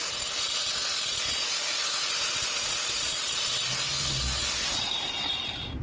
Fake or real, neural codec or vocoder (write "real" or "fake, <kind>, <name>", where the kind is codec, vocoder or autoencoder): real